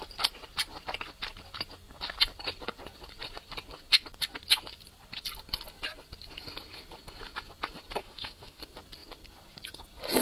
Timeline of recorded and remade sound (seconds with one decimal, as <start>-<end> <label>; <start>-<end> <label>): 0.0-8.0 recorded; 8.0-8.6 remade; 8.6-10.2 recorded

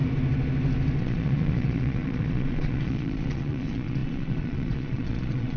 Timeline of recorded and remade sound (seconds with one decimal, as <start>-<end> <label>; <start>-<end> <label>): 0.0-1.0 recorded; 1.0-5.6 remade

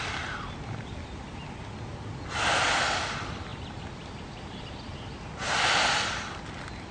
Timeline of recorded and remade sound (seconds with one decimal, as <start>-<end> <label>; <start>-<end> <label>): 0.0-6.9 recorded

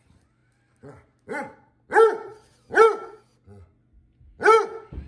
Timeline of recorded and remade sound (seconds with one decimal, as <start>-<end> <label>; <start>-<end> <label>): 0.0-5.1 recorded